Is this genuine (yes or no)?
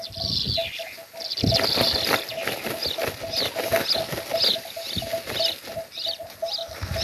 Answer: yes